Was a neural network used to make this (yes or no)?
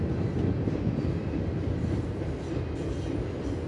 no